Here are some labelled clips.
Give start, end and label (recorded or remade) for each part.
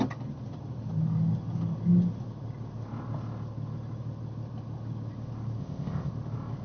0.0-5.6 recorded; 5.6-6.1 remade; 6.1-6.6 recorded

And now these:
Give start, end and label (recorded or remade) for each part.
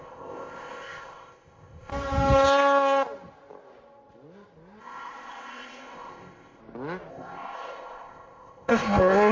0.0-1.9 remade; 1.9-4.8 recorded; 4.8-6.6 remade; 6.6-7.1 recorded; 7.1-9.3 remade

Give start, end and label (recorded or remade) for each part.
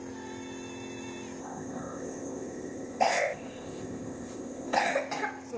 0.0-1.4 recorded; 1.4-4.8 remade; 4.8-5.6 recorded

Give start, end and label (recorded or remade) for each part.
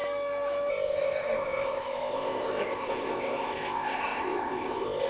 0.0-0.7 recorded; 0.7-5.1 remade